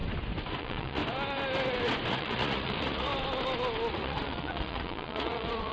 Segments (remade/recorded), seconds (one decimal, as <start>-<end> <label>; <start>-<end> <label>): 0.0-0.6 recorded; 0.6-1.0 remade; 1.0-2.1 recorded; 2.1-3.1 remade; 3.1-3.9 recorded; 3.9-5.7 remade